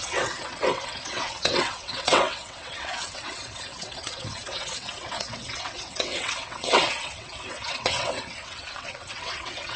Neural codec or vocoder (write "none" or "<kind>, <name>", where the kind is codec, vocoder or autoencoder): vocoder, WaveNeXt